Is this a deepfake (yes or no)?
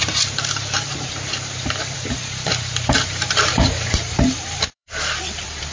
yes